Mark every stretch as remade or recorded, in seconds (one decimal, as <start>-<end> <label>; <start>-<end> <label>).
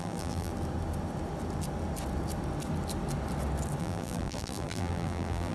0.0-0.5 remade; 0.5-3.8 recorded; 3.8-5.5 remade